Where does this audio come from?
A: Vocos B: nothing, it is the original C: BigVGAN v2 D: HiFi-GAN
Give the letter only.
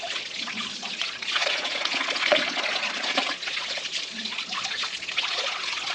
A